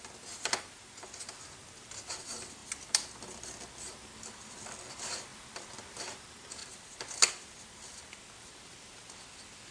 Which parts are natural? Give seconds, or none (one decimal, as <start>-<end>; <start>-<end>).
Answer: 0.0-9.7